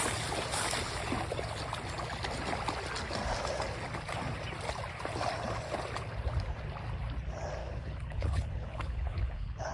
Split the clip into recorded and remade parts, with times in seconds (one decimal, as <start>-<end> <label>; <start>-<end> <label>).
0.0-7.6 recorded; 7.6-9.7 remade